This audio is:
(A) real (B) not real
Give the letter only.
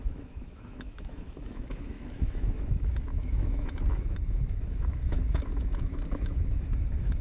B